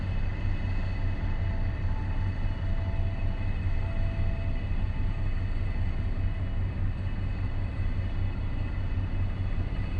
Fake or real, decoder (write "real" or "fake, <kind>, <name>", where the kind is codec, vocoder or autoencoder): real